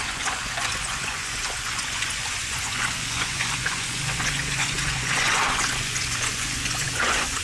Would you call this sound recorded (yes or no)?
no